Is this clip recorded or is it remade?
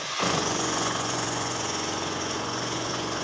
remade